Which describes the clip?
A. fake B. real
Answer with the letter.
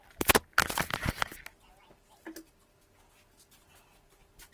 B